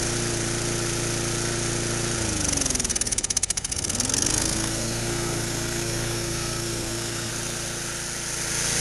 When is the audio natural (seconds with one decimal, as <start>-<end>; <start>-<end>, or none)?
0.0-2.9; 7.3-8.8